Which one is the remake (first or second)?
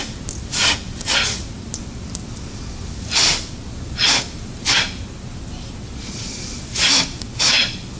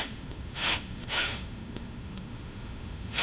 second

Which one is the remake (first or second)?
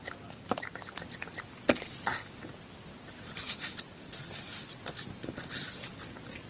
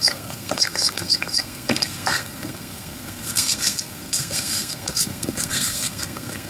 second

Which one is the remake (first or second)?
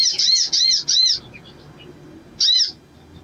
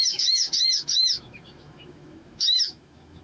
second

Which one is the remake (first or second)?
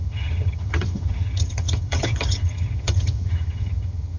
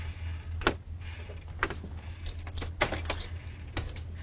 first